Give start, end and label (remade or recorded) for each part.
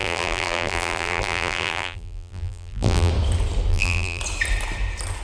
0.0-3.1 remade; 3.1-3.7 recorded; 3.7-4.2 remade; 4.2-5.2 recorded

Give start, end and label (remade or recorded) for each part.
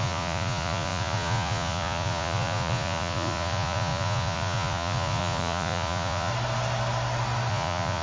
0.0-6.3 remade; 6.3-7.5 recorded; 7.5-8.0 remade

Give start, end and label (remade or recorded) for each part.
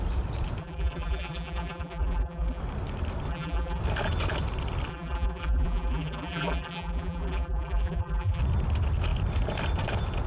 0.0-0.6 recorded; 0.6-2.6 remade; 2.6-3.3 recorded; 3.3-3.8 remade; 3.8-4.9 recorded; 4.9-8.4 remade; 8.4-10.3 recorded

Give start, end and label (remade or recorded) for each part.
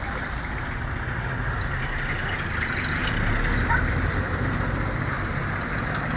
0.0-3.0 recorded; 3.0-4.5 remade; 4.5-6.2 recorded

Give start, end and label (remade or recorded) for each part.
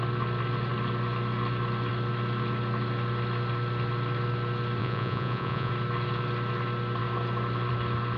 0.0-4.8 recorded; 4.8-5.7 remade; 5.7-8.2 recorded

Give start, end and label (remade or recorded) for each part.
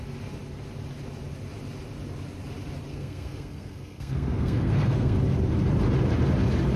0.0-2.9 recorded; 2.9-5.2 remade; 5.2-6.8 recorded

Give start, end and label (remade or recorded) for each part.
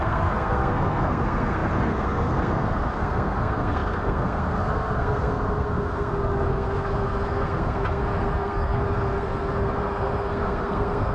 0.0-11.1 remade